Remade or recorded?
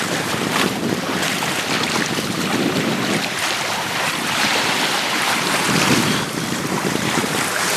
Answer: remade